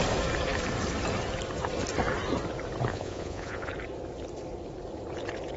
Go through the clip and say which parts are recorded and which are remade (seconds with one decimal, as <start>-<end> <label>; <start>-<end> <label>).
0.0-2.9 recorded; 2.9-3.7 remade; 3.7-5.6 recorded